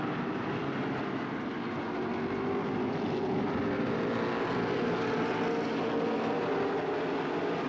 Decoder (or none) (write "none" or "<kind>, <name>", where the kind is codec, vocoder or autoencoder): none